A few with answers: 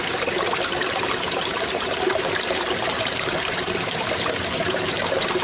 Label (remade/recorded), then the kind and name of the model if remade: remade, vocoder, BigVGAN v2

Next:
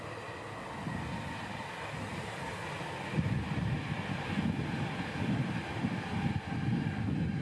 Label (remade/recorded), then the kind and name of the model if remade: recorded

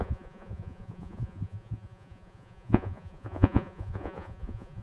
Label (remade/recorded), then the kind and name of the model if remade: remade, vocoder, Vocos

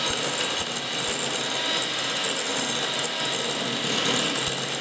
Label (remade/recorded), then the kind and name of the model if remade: recorded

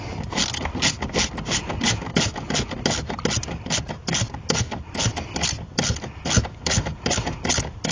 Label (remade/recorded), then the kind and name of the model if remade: recorded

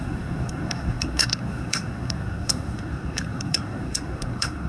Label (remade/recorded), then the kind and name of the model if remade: remade, codec, SNAC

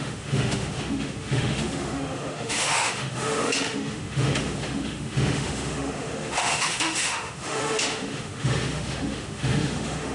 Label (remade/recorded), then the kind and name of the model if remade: remade, autoencoder, DAC-VAE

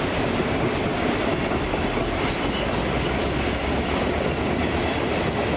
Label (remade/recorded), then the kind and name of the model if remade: recorded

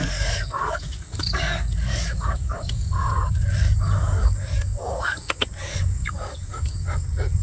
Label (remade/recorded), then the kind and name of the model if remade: remade, codec, DAC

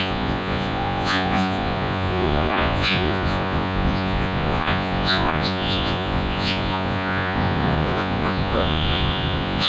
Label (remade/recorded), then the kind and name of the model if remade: remade, vocoder, Vocos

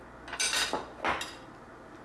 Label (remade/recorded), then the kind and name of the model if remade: recorded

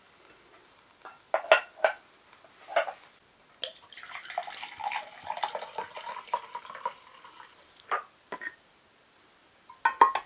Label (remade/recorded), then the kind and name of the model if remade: recorded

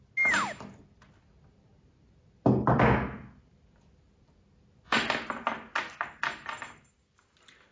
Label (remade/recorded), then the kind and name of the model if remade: recorded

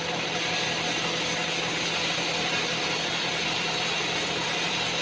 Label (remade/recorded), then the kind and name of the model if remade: recorded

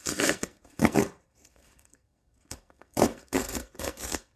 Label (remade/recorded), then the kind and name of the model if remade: remade, codec, SNAC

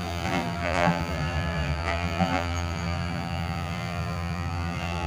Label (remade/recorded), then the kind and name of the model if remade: remade, vocoder, BigVGAN v2